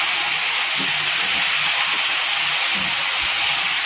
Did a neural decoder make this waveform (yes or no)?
no